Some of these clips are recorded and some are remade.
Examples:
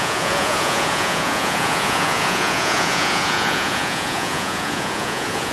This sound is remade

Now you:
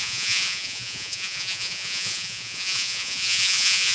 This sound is remade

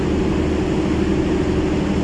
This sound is recorded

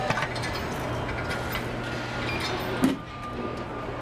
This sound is recorded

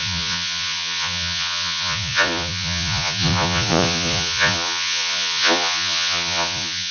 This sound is remade